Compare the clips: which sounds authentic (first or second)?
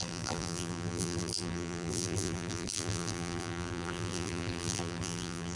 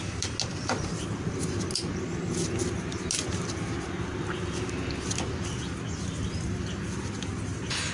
second